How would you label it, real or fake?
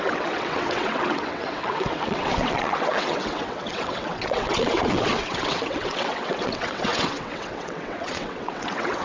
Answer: fake